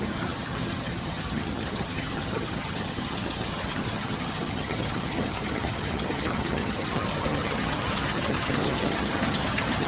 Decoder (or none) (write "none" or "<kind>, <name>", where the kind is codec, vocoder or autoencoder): vocoder, HiFi-GAN